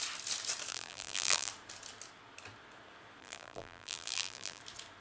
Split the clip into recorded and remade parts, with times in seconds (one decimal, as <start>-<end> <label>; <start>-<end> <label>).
0.0-0.7 recorded; 0.7-1.5 remade; 1.5-3.2 recorded; 3.2-4.6 remade; 4.6-5.0 recorded